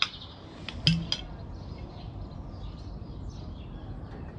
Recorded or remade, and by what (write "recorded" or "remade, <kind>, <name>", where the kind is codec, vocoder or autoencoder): recorded